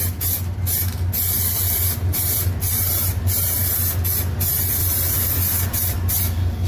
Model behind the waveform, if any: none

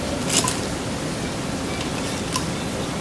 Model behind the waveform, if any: none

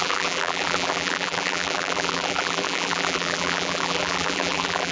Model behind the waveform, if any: vocoder, BigVGAN v2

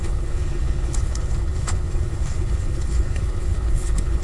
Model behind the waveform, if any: codec, HILCodec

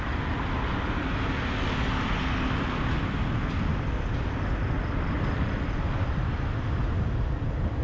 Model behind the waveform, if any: none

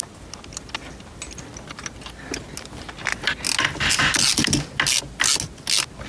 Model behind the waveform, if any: none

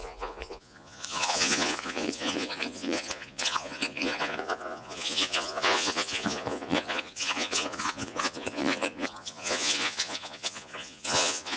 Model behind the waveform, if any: vocoder, Vocos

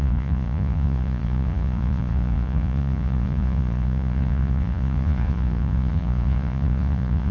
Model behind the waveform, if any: vocoder, Vocos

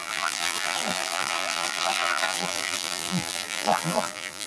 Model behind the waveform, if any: vocoder, BigVGAN v2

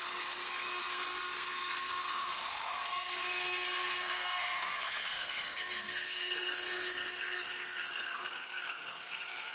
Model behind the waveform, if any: codec, SNAC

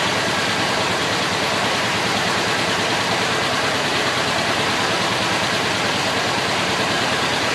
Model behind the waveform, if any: vocoder, BigVGAN v2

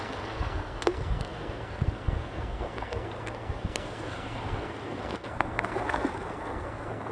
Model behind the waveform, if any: codec, SNAC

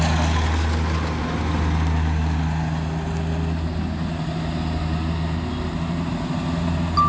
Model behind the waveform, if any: none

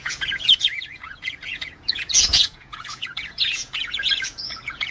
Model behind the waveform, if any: vocoder, Vocos